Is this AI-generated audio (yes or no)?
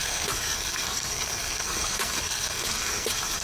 yes